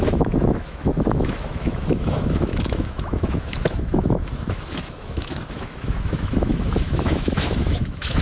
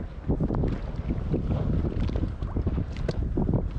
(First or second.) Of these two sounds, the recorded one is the second